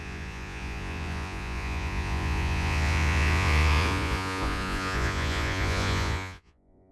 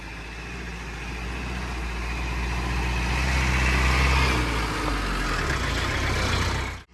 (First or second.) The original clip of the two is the second